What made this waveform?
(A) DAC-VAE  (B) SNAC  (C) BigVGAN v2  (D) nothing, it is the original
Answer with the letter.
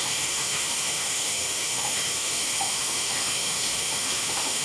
A